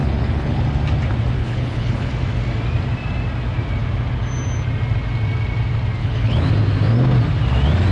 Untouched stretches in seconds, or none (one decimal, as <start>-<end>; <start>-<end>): 0.6-1.4; 2.1-6.0; 6.5-7.9